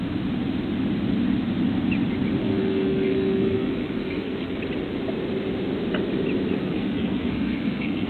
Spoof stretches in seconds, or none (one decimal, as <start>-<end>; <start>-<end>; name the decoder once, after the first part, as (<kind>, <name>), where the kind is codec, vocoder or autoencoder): 2.4-4.6 (codec, SNAC); 6.5-8.1